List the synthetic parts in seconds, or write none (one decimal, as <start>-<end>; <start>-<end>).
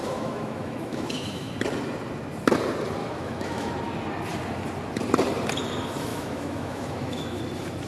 0.0-1.5; 3.0-3.7; 6.1-7.4